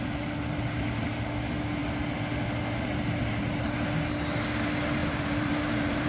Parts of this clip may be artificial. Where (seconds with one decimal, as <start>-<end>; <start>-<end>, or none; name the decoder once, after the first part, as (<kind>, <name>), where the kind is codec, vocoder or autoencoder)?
5.0-6.1 (vocoder, BigVGAN v2)

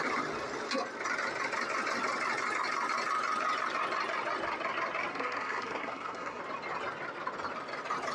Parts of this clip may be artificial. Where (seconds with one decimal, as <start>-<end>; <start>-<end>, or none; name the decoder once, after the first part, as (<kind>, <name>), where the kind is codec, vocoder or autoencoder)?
5.1-6.4 (codec, SNAC)

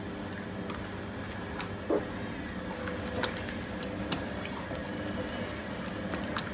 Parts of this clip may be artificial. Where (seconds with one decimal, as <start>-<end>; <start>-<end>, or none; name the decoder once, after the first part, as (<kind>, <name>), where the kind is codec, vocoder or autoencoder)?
none

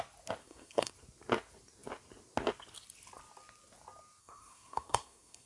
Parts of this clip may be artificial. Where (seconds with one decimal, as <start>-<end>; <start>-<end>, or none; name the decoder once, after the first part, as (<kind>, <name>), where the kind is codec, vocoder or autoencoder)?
0.4-0.9 (codec, SNAC); 4.2-5.5

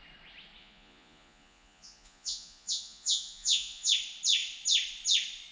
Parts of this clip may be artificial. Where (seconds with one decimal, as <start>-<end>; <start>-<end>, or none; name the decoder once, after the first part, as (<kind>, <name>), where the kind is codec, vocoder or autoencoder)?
0.6-3.9 (vocoder, Vocos)

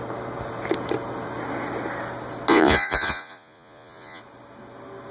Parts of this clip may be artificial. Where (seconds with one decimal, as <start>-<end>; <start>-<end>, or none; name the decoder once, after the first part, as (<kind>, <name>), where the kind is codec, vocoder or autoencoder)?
2.5-4.2 (vocoder, Vocos)